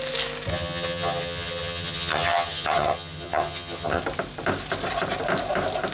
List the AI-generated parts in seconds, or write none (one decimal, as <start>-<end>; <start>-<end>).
0.5-4.0